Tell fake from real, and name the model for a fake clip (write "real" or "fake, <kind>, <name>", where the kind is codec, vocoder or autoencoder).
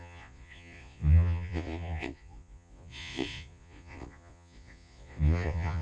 fake, vocoder, Vocos